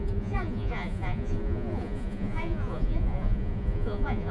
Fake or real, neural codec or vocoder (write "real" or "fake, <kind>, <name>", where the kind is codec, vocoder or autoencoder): fake, vocoder, Vocos